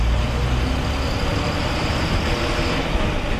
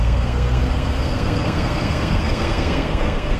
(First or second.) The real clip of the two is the first